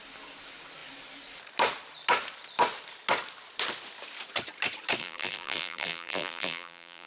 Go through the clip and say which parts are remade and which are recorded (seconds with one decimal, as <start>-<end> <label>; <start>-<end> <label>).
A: 0.0-5.0 recorded; 5.0-7.1 remade